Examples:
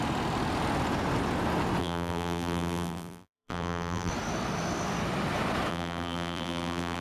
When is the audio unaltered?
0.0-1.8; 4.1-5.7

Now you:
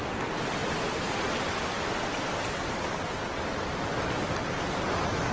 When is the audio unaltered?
0.0-0.6; 3.8-5.3